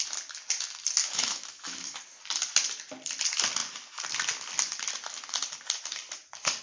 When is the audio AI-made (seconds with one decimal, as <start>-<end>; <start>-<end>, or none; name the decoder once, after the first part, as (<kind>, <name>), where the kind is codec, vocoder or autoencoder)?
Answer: 1.0-2.0 (autoencoder, DAC-VAE)